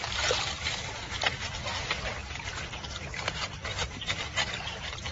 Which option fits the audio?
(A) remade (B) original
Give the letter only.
A